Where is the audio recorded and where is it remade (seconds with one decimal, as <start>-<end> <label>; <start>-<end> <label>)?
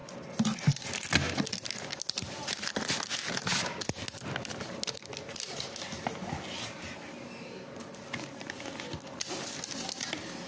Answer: 0.0-10.5 recorded